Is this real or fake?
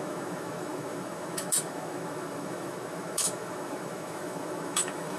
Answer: fake